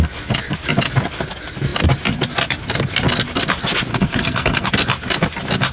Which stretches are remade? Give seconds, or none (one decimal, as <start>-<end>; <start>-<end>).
3.9-4.7